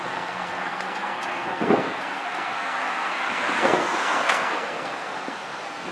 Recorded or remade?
remade